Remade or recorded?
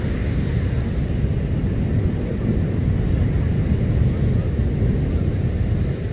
recorded